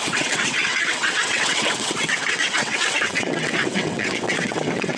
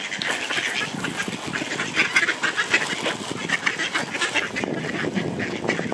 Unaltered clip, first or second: second